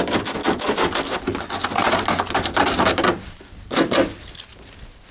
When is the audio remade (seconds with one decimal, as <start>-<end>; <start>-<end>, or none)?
none